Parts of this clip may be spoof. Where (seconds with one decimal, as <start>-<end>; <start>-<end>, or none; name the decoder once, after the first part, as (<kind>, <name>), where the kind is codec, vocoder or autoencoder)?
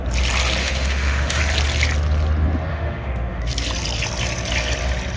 0.6-1.4 (autoencoder, DAC-VAE); 2.7-3.4